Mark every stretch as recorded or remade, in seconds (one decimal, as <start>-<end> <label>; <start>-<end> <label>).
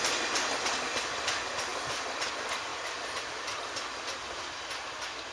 0.0-1.7 recorded; 1.7-2.3 remade; 2.3-5.3 recorded